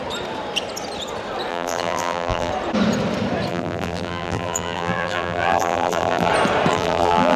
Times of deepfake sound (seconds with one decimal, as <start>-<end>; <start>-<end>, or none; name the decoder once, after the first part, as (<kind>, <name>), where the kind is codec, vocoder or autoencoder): 1.5-2.5 (vocoder, BigVGAN v2); 3.5-6.3; 6.7-7.4